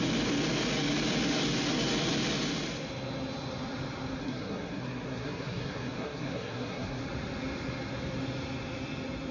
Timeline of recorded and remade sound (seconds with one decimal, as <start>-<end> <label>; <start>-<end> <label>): 0.0-4.2 recorded; 4.2-7.0 remade; 7.0-9.3 recorded